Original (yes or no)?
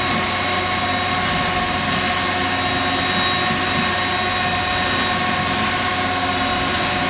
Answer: yes